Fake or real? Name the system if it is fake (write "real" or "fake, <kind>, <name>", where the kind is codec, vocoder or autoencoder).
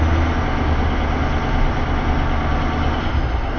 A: real